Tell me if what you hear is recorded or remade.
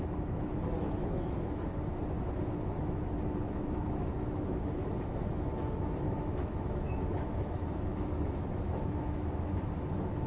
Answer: remade